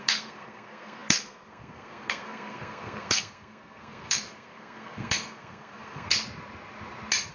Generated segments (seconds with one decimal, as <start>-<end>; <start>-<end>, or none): 0.0-6.1